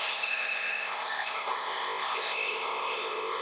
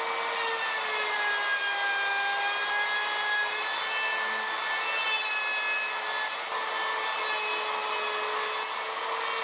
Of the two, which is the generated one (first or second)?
first